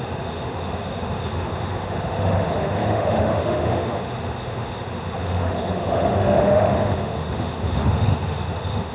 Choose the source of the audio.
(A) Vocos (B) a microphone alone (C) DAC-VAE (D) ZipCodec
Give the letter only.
C